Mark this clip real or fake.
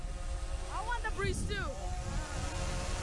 real